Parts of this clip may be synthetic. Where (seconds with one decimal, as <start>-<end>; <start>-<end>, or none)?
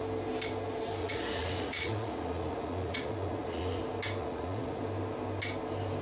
1.0-3.8; 4.2-4.8